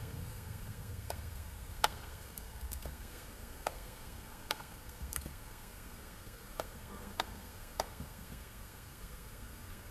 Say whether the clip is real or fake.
fake